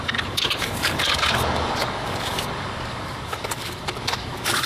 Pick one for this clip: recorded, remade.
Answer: remade